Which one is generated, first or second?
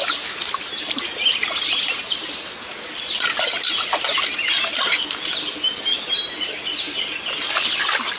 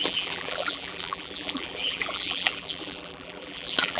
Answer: second